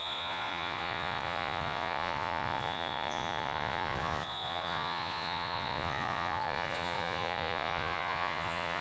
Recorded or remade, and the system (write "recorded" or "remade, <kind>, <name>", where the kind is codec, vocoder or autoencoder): remade, vocoder, Vocos